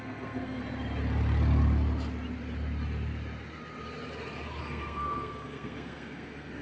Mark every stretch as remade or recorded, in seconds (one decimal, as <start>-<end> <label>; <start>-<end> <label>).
0.0-0.6 remade; 0.6-4.6 recorded; 4.6-6.6 remade